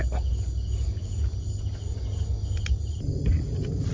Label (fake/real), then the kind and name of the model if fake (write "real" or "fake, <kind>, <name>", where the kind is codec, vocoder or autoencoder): real